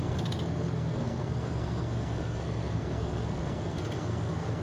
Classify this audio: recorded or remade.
remade